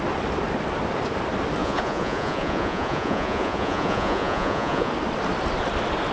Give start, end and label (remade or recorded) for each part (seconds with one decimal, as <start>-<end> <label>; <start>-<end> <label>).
0.0-1.6 recorded; 1.6-4.9 remade; 4.9-6.1 recorded